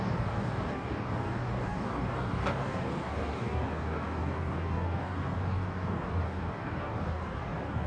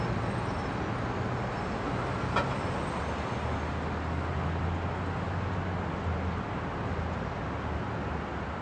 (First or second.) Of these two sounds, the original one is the second